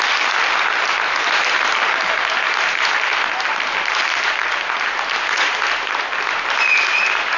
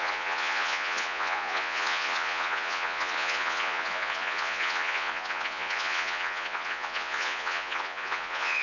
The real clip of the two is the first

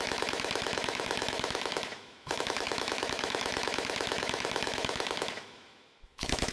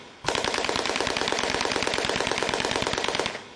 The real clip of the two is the second